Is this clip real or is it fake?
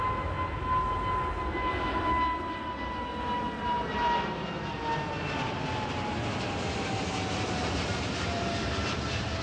real